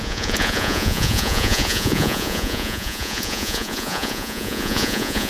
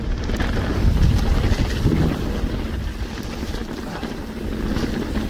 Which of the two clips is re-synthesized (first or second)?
first